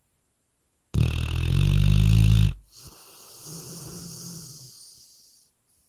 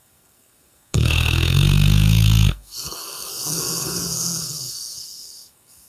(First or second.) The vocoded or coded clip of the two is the second